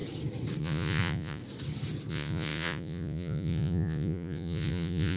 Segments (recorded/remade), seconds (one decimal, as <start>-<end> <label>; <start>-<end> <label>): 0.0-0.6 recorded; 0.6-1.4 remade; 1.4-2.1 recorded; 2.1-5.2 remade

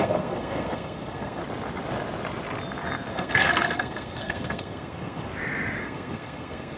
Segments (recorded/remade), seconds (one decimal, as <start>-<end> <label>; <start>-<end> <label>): 0.0-1.4 remade; 1.4-3.1 recorded; 3.1-5.3 remade; 5.3-5.8 recorded; 5.8-6.8 remade

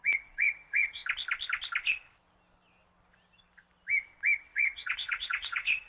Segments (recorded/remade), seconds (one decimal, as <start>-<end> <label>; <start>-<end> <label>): 0.0-1.0 remade; 1.0-4.5 recorded; 4.5-5.9 remade